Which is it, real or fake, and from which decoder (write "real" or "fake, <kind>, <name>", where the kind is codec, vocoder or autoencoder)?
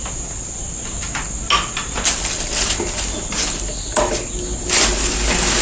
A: real